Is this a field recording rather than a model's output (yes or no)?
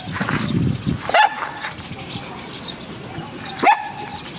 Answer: yes